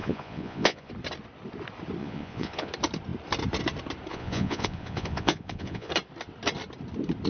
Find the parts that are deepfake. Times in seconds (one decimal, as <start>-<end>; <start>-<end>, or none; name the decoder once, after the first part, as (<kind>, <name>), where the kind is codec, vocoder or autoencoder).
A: 0.0-0.9 (vocoder, Vocos); 2.0-2.7; 4.1-5.9